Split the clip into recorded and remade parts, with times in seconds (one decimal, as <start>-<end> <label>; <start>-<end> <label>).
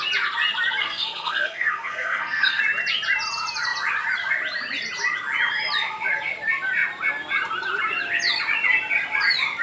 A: 0.0-0.8 recorded; 0.8-2.6 remade; 2.6-9.6 recorded